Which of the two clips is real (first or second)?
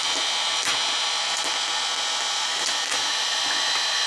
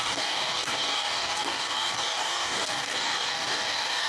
first